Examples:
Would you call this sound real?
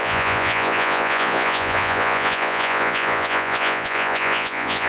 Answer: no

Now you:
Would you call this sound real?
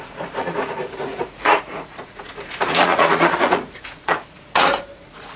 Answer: no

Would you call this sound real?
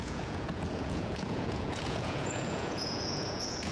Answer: no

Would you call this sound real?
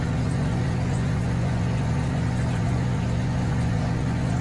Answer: no